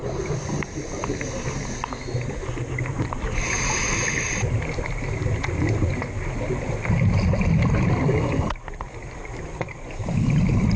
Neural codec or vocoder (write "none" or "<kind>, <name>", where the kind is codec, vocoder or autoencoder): none